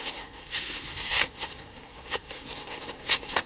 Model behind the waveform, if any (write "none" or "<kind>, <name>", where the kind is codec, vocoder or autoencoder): codec, SNAC